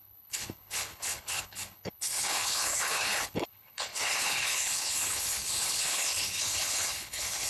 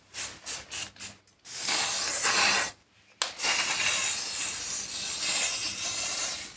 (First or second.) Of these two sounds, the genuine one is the second